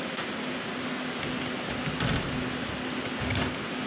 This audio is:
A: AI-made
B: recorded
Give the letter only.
B